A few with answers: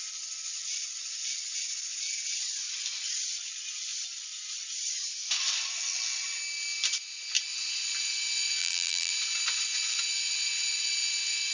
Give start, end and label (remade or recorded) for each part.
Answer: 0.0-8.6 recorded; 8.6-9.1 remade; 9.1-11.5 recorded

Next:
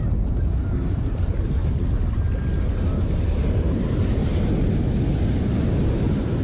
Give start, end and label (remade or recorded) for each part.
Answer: 0.0-1.6 remade; 1.6-3.7 recorded; 3.7-4.3 remade; 4.3-5.6 recorded; 5.6-6.4 remade

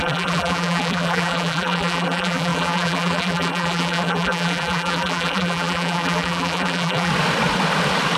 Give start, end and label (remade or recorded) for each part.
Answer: 0.0-7.1 remade; 7.1-8.2 recorded

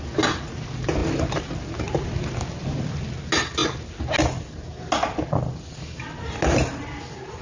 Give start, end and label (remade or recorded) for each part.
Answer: 0.0-7.4 recorded

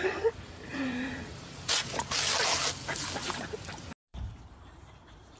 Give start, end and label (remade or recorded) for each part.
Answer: 0.0-0.7 recorded; 0.7-1.9 remade; 1.9-4.1 recorded; 4.1-5.4 remade

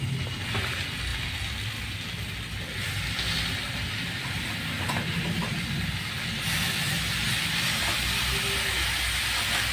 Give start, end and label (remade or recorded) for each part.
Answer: 0.0-9.7 recorded

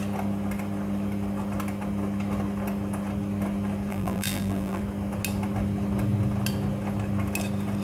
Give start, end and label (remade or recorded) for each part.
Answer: 0.0-3.9 recorded; 3.9-4.8 remade; 4.8-7.8 recorded